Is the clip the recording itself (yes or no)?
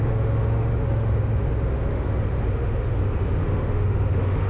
no